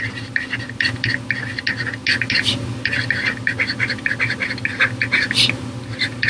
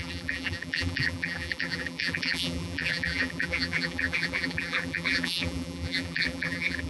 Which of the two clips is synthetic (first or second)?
second